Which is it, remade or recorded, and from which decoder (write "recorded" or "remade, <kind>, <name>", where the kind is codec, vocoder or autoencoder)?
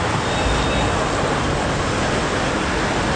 recorded